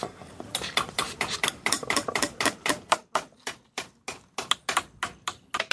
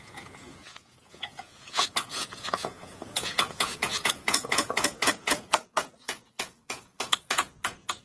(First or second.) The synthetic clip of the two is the second